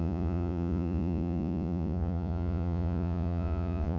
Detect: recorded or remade remade